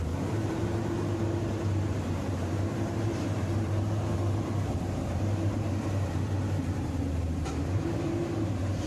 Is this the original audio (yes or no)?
no